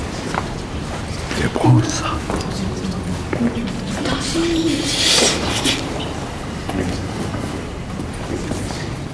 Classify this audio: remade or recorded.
recorded